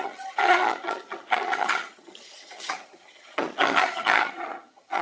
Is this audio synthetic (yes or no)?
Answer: yes